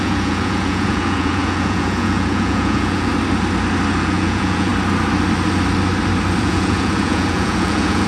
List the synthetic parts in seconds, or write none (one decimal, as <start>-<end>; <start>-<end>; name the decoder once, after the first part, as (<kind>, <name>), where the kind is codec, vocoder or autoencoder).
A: 0.0-3.1 (vocoder, Vocos); 4.0-4.7; 6.4-8.1

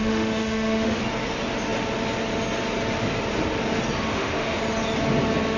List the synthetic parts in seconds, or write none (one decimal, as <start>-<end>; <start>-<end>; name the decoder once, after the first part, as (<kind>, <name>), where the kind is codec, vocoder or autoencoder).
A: 0.0-1.0 (autoencoder, DAC-VAE); 4.1-4.6